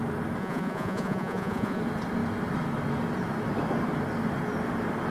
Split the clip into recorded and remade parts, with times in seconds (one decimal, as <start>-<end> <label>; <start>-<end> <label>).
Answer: 0.0-0.4 recorded; 0.4-1.8 remade; 1.8-5.1 recorded